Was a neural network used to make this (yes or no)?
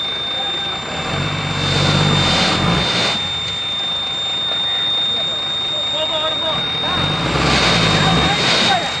no